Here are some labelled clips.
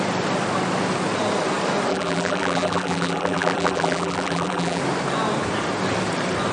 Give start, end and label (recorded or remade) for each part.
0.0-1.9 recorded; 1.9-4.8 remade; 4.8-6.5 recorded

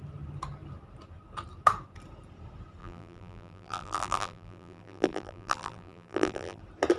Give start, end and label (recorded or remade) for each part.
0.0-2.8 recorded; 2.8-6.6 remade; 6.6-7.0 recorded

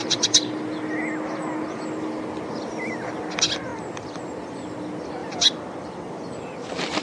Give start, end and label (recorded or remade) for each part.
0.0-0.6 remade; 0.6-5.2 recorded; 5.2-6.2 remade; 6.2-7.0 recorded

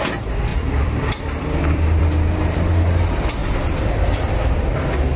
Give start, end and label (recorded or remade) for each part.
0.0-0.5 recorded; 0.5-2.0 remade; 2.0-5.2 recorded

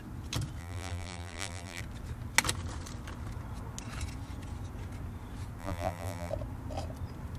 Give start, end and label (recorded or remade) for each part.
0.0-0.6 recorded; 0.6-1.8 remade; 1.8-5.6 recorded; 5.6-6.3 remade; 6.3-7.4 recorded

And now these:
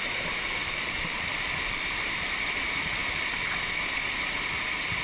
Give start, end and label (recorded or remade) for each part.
0.0-0.6 recorded; 0.6-2.4 remade; 2.4-5.0 recorded

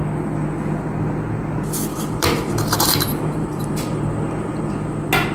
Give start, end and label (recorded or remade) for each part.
0.0-1.9 recorded; 1.9-4.6 remade; 4.6-5.3 recorded

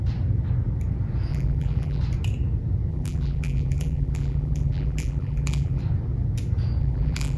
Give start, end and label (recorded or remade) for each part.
0.0-1.3 recorded; 1.3-2.0 remade; 2.0-2.9 recorded; 2.9-5.8 remade; 5.8-6.8 recorded; 6.8-7.4 remade